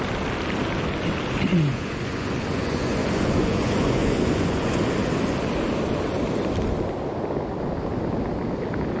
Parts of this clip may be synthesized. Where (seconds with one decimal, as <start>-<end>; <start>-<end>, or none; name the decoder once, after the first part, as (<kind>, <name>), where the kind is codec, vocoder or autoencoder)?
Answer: 1.5-4.8 (vocoder, Vocos)